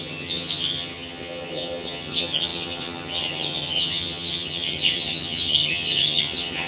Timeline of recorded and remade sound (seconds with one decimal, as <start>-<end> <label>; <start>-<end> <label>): 0.0-6.7 remade